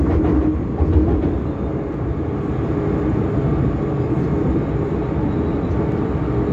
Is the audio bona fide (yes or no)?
yes